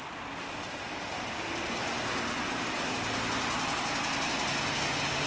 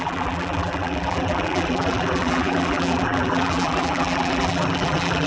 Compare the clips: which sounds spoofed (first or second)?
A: second